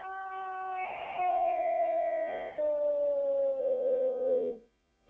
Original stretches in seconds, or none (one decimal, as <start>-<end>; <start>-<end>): 0.0-1.3; 2.5-3.6